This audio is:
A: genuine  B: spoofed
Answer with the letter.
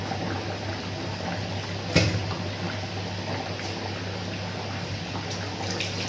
A